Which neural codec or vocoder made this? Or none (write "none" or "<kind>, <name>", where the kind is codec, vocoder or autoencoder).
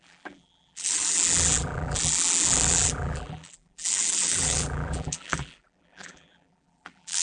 vocoder, BigVGAN v2